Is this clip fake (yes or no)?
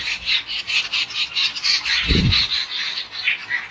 no